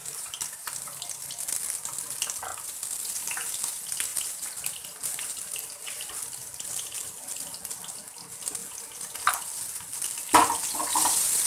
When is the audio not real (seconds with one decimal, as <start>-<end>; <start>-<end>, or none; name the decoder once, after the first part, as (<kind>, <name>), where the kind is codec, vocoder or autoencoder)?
0.0-0.7 (vocoder, BigVGAN v2); 4.1-4.6